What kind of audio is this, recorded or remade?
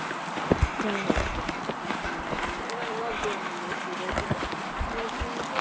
recorded